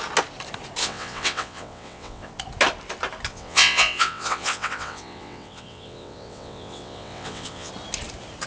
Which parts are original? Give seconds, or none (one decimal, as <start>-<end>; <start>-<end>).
0.0-0.8; 2.3-3.3; 7.7-8.5